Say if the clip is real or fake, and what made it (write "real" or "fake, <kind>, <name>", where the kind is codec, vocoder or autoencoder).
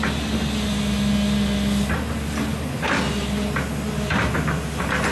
real